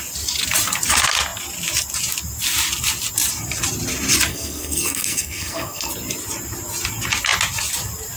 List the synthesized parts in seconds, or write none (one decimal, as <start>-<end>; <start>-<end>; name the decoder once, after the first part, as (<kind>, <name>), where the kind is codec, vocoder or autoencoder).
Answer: 4.3-5.9 (codec, SNAC)